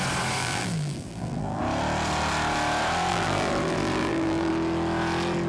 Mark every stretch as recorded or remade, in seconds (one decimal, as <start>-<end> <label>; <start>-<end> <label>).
0.0-0.4 recorded; 0.4-1.6 remade; 1.6-3.1 recorded; 3.1-4.5 remade; 4.5-5.5 recorded